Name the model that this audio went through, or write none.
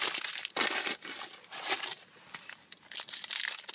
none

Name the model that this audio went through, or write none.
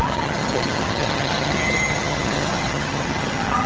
vocoder, HiFi-GAN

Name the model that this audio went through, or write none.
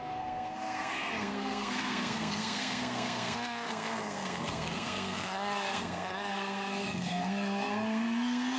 codec, SNAC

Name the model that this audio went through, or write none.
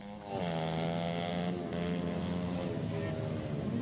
none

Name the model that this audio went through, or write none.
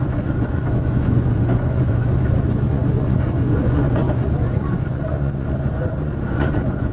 vocoder, Vocos